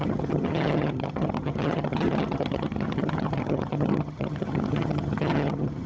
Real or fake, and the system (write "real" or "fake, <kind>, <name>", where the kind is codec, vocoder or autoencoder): fake, vocoder, HiFi-GAN